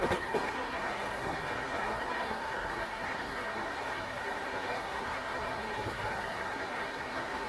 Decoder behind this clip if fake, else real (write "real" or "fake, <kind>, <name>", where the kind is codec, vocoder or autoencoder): fake, codec, SNAC